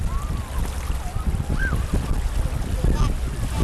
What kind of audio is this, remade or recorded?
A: recorded